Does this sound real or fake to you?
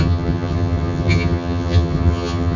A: fake